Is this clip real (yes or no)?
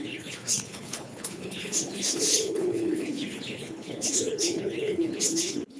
no